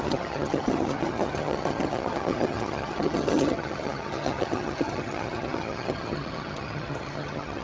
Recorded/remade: remade